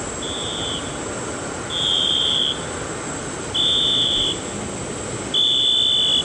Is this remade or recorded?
recorded